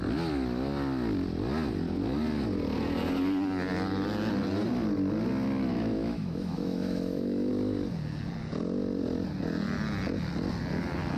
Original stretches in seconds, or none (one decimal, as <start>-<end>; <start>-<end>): 0.0-5.7; 7.5-11.2